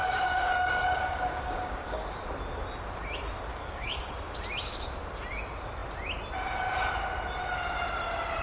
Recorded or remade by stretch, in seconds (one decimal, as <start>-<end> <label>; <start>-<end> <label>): 0.0-2.2 remade; 2.2-3.5 recorded; 3.5-4.1 remade; 4.1-8.4 recorded